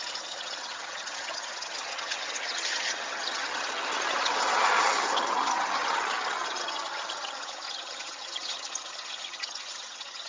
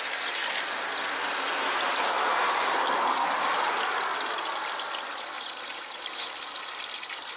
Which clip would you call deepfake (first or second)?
first